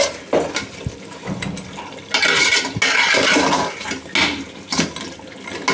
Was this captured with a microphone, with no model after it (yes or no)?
yes